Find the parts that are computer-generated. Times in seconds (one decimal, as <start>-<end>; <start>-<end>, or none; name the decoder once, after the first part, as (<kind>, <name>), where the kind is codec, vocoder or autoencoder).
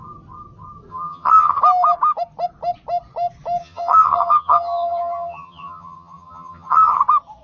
0.9-1.6 (vocoder, HiFi-GAN); 3.6-7.0